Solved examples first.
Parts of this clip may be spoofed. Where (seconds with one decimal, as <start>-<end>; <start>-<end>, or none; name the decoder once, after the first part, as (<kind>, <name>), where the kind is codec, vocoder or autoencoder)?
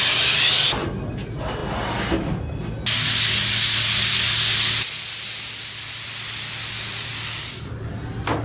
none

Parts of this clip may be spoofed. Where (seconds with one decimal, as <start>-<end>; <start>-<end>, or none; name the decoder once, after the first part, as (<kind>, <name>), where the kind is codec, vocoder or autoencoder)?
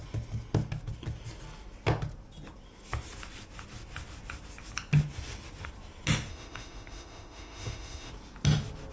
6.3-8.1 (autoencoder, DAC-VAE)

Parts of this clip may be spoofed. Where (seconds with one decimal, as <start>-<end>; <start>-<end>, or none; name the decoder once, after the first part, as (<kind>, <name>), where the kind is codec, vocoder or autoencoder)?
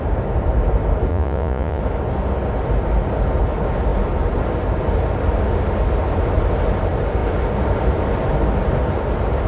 1.1-1.8 (vocoder, Vocos)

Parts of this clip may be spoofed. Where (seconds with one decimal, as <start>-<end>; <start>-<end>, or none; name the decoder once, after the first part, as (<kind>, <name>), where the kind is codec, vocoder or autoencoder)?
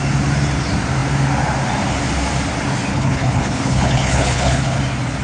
2.9-4.8 (codec, HILCodec)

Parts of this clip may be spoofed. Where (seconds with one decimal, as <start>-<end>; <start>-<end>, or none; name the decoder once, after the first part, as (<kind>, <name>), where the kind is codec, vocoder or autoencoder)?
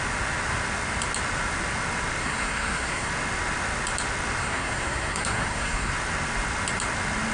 2.2-3.1 (codec, SNAC); 4.4-5.9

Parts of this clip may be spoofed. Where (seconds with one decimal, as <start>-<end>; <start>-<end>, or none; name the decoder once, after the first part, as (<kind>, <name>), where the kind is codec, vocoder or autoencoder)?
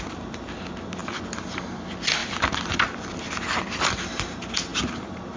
2.2-3.2 (vocoder, BigVGAN v2)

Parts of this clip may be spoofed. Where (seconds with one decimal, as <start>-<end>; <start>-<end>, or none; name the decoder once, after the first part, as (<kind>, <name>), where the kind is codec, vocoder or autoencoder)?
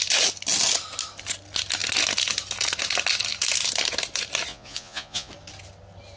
4.5-5.3 (vocoder, Vocos)